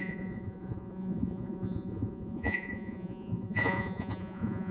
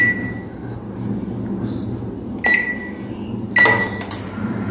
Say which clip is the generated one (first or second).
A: first